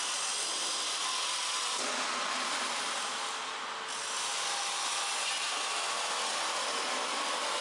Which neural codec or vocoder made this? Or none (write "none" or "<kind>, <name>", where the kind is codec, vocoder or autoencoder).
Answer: none